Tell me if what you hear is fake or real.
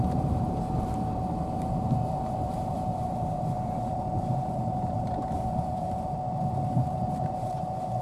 fake